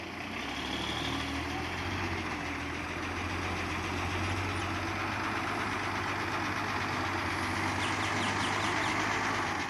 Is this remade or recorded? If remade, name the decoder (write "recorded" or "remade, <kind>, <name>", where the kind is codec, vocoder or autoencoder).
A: recorded